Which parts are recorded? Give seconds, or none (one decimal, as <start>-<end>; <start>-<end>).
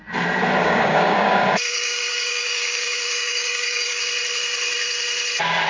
0.0-0.6; 4.0-5.7